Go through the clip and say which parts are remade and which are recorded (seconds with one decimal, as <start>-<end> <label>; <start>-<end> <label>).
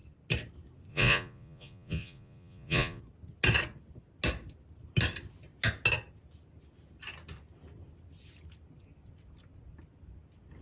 0.0-0.9 recorded; 0.9-3.0 remade; 3.0-10.6 recorded